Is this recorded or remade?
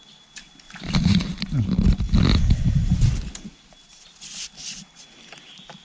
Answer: recorded